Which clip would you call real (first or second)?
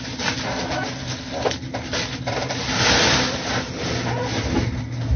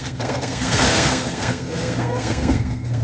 first